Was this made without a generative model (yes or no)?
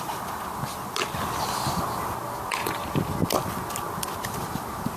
yes